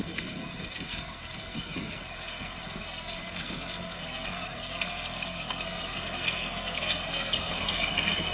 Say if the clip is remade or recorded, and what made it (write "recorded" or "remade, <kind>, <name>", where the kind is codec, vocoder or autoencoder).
remade, codec, SNAC